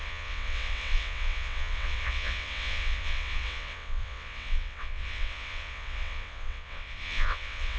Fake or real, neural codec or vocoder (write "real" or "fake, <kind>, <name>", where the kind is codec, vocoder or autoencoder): fake, vocoder, WaveNeXt